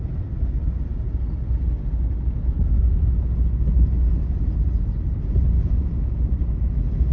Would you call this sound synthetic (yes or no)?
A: no